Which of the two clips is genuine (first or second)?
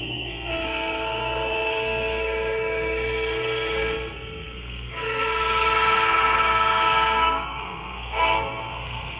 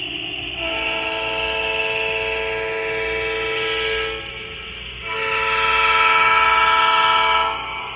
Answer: second